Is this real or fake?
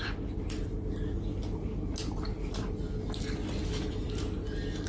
real